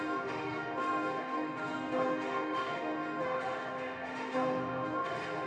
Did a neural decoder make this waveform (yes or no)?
yes